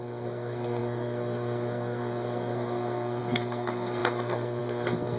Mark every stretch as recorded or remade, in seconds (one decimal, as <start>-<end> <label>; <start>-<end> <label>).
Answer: 0.0-5.2 remade

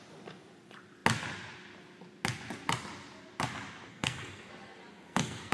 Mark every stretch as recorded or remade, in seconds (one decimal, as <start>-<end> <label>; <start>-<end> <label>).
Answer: 0.0-3.9 recorded; 3.9-4.5 remade; 4.5-4.9 recorded; 4.9-5.5 remade

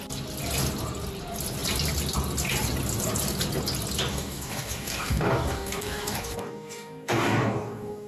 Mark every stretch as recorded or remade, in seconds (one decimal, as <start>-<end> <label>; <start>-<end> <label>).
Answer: 0.0-4.1 recorded; 4.1-8.1 remade

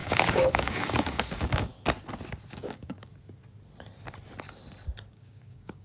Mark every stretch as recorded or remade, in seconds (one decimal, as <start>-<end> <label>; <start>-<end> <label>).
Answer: 0.0-1.7 remade; 1.7-2.5 recorded; 2.5-3.1 remade; 3.1-5.1 recorded; 5.1-5.8 remade

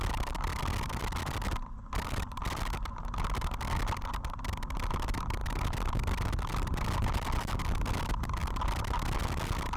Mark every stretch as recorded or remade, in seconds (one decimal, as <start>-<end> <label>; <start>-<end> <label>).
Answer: 0.0-5.4 recorded; 5.4-7.5 remade; 7.5-9.8 recorded

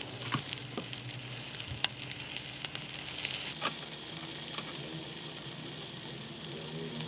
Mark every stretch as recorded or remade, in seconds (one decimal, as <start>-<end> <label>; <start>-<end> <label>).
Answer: 0.0-0.6 recorded; 0.6-2.7 remade; 2.7-5.0 recorded; 5.0-6.1 remade; 6.1-7.1 recorded

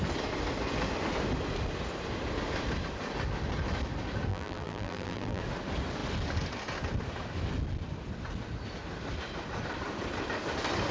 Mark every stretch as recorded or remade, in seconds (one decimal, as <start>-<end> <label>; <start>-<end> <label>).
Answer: 0.0-4.3 recorded; 4.3-5.4 remade; 5.4-10.9 recorded